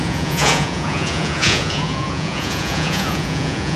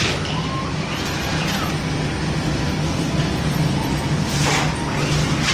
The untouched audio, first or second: second